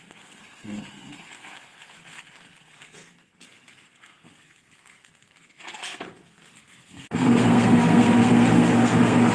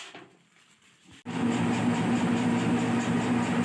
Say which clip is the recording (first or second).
second